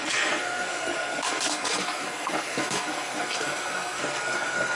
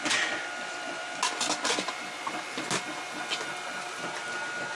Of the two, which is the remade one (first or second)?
first